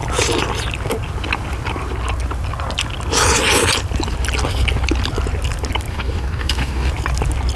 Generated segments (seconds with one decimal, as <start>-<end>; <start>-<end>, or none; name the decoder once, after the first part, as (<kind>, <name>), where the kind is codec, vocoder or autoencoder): 5.9-6.9 (codec, DAC)